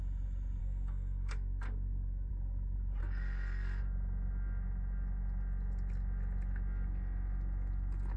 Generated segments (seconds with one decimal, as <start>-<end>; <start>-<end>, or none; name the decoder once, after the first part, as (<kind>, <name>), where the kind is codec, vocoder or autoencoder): 0.6-2.3 (codec, SNAC); 3.0-3.8